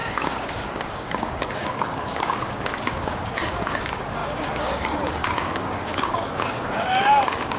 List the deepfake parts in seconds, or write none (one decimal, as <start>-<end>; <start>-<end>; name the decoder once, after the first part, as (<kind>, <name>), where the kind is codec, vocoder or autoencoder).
0.0-7.6 (codec, DAC)